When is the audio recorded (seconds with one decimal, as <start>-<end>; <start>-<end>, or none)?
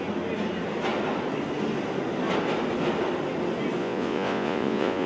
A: 0.0-3.8